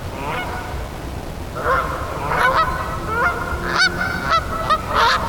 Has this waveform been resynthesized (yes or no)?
no